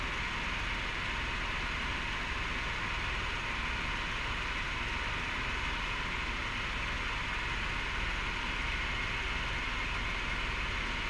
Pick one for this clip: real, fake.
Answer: real